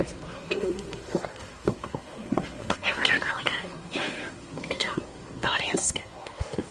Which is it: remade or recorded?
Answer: remade